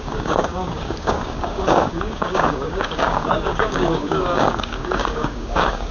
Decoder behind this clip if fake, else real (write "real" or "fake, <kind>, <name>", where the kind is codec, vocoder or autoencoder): fake, codec, DAC